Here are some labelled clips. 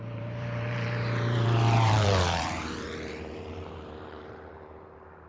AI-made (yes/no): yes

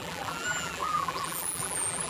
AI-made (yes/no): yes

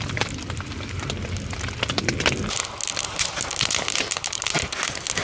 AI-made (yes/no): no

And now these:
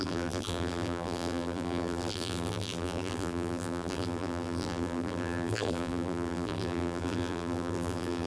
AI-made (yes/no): yes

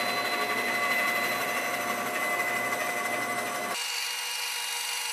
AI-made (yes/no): no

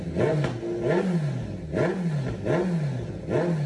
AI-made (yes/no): no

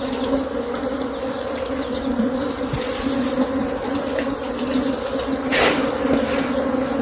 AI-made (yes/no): no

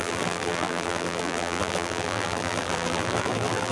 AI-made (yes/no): yes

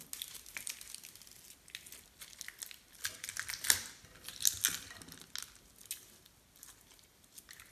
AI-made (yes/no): no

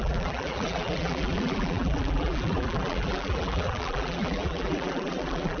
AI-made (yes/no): yes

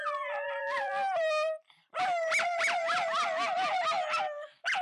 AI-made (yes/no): yes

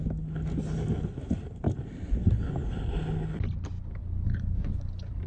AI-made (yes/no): no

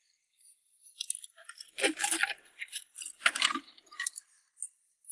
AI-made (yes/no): no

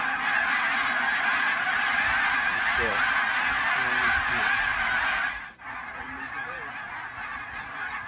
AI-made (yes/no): no